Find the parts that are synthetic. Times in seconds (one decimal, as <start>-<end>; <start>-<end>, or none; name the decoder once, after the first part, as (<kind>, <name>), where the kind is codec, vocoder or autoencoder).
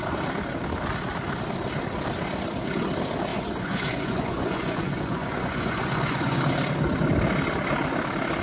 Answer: 3.3-6.4 (vocoder, Vocos)